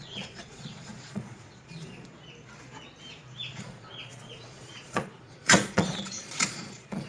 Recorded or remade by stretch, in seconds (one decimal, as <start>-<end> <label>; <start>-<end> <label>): 0.0-2.1 remade; 2.1-3.5 recorded; 3.5-7.1 remade